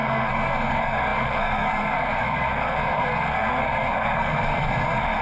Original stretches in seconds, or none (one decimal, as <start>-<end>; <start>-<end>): none